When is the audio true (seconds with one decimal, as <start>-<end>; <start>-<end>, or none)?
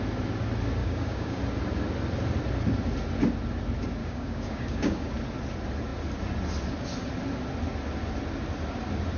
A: 0.0-0.8; 1.4-4.0; 5.1-9.2